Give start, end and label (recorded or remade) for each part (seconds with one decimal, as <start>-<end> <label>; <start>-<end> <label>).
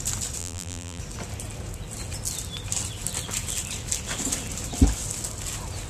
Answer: 0.0-0.4 recorded; 0.4-1.0 remade; 1.0-5.9 recorded